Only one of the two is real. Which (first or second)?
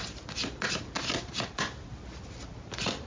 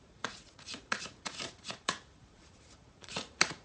first